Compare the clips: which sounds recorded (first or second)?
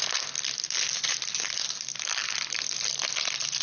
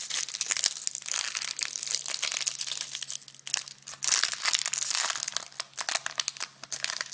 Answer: second